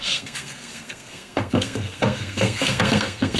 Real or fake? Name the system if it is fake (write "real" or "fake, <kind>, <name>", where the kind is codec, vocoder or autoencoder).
fake, codec, SNAC